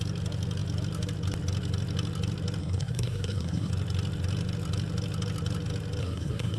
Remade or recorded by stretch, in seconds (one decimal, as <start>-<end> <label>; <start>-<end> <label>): 0.0-2.6 recorded; 2.6-3.7 remade; 3.7-6.0 recorded; 6.0-6.6 remade